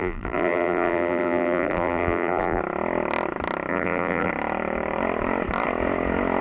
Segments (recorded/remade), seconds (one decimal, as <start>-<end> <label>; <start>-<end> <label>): 0.0-2.6 remade; 2.6-3.7 recorded; 3.7-4.3 remade; 4.3-6.4 recorded